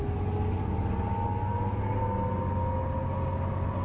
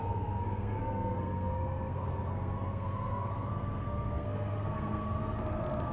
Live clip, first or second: first